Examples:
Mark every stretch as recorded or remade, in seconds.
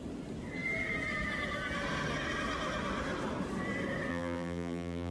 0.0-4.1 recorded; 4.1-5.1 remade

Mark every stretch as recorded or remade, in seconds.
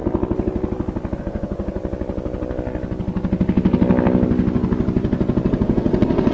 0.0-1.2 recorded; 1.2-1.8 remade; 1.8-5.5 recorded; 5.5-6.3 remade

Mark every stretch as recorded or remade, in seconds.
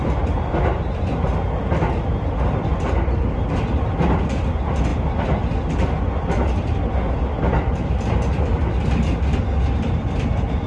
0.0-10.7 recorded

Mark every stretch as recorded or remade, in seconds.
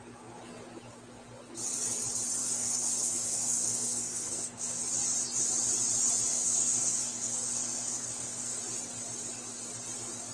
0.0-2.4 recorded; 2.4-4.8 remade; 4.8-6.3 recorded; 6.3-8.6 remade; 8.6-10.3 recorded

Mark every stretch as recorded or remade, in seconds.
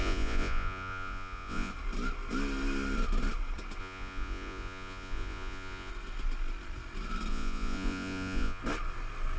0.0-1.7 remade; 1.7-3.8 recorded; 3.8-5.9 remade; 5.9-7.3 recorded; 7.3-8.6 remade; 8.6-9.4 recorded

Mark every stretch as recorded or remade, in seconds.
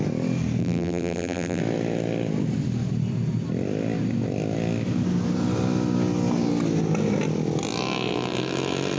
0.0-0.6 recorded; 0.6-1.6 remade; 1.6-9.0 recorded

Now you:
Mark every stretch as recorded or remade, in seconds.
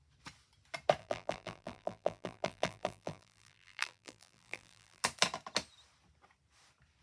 0.0-1.0 recorded; 1.0-5.0 remade; 5.0-7.0 recorded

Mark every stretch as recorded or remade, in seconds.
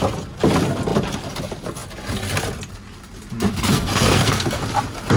0.0-3.5 recorded; 3.5-4.6 remade; 4.6-5.2 recorded